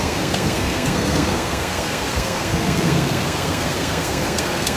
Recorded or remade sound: remade